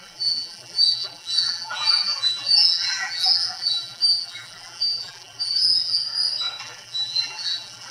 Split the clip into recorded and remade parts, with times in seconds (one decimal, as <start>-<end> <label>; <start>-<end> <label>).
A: 0.0-6.0 remade; 6.0-6.6 recorded; 6.6-7.9 remade